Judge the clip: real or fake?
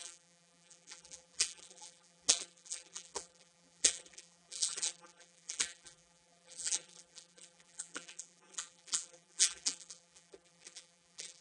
fake